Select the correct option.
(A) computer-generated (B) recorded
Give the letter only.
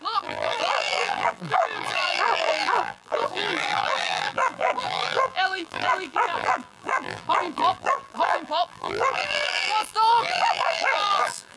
A